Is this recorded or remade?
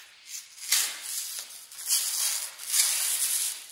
recorded